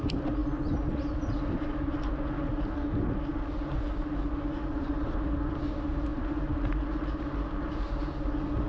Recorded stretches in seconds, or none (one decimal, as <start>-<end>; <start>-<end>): 0.0-8.7